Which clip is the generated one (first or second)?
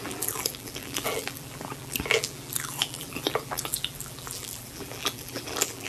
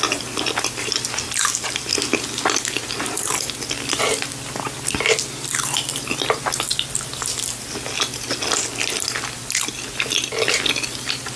first